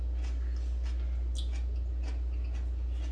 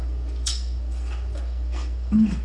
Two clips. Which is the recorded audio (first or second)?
first